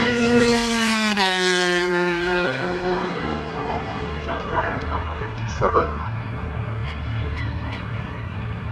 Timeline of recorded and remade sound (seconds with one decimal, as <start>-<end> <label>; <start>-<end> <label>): 0.0-8.7 remade